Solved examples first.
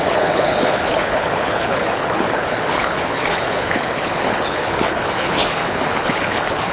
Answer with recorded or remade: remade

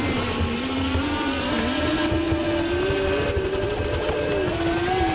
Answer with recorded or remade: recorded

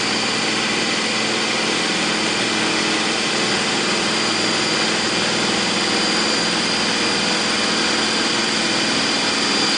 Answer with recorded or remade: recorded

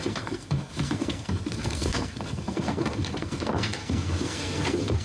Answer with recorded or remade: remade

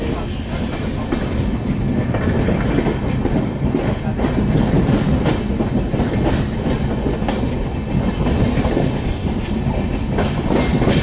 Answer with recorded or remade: recorded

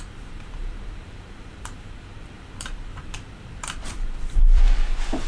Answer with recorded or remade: remade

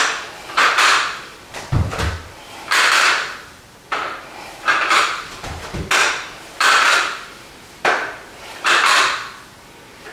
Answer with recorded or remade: remade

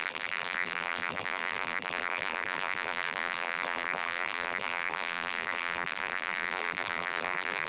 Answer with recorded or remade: remade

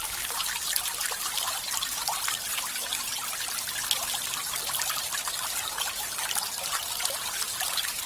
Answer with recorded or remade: remade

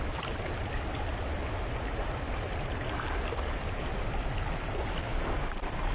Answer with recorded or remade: recorded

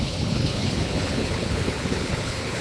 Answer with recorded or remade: remade